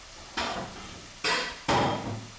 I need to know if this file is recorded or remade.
recorded